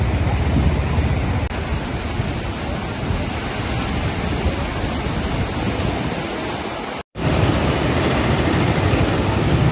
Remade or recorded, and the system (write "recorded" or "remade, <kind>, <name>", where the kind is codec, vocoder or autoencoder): recorded